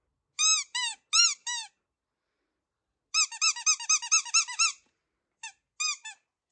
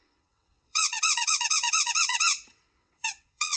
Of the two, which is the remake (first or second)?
second